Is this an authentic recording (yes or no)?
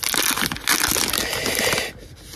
yes